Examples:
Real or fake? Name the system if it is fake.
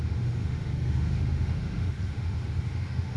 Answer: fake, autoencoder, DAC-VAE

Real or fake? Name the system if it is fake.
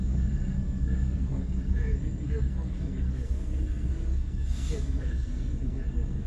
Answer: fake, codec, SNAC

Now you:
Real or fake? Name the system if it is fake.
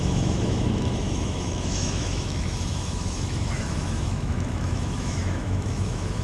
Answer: fake, autoencoder, DAC-VAE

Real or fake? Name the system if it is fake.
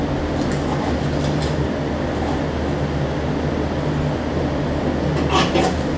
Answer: real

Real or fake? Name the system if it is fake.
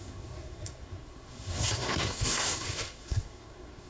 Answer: fake, codec, SNAC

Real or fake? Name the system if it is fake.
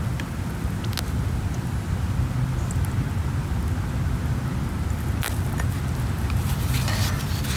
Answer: real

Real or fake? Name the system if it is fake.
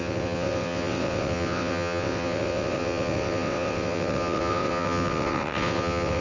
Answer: fake, vocoder, WaveNeXt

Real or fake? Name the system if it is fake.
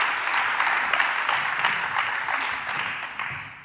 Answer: real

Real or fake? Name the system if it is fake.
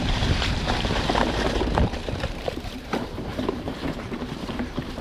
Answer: fake, vocoder, BigVGAN v2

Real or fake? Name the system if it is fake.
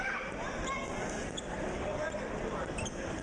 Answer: real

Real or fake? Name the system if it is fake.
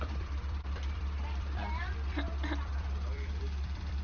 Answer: fake, vocoder, BigVGAN v2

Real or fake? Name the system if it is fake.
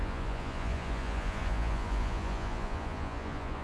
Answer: fake, vocoder, Vocos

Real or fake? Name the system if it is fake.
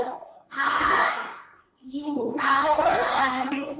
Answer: fake, codec, SNAC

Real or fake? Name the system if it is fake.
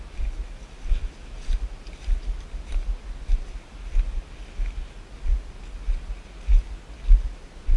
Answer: real